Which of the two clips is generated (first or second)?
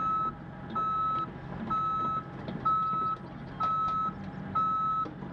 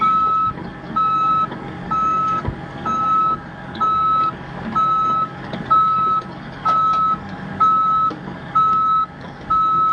second